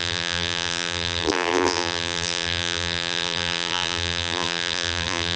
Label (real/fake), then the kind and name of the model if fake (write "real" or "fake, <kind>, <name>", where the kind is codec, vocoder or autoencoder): fake, vocoder, BigVGAN v2